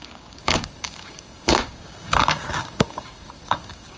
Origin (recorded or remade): remade